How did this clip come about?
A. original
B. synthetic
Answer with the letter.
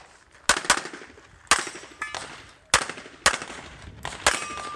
A